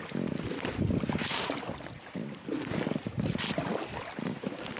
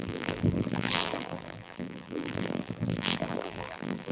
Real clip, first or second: first